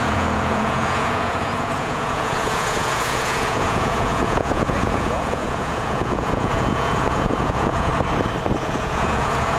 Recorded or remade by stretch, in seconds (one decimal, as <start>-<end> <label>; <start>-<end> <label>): 0.0-7.9 remade; 7.9-8.6 recorded; 8.6-9.6 remade